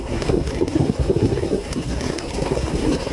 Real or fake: fake